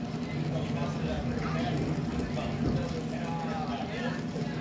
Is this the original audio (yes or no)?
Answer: yes